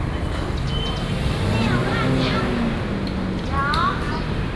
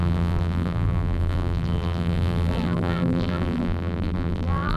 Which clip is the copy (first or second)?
second